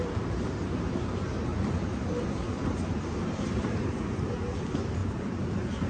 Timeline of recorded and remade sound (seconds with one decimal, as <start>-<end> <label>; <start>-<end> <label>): 0.0-5.9 remade